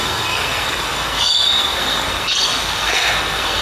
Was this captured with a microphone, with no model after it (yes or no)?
no